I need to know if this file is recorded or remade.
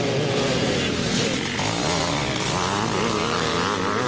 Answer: recorded